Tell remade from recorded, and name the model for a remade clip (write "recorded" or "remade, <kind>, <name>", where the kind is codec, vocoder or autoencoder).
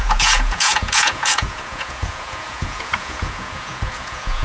remade, vocoder, Vocos